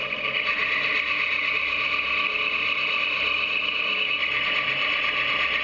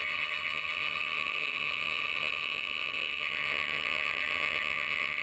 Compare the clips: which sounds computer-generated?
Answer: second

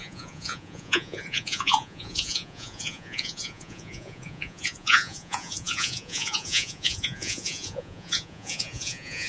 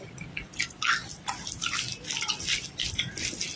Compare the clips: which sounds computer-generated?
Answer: first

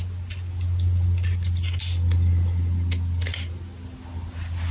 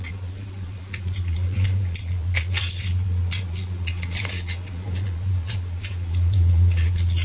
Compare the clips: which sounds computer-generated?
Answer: second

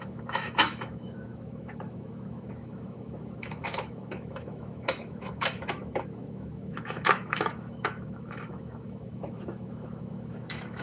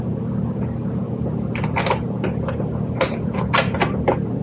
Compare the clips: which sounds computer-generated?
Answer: first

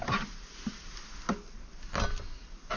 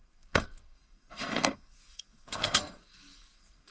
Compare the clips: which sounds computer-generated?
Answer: second